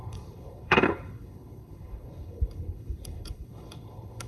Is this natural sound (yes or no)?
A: no